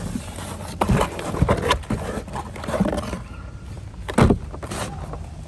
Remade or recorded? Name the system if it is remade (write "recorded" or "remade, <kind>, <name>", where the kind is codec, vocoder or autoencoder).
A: recorded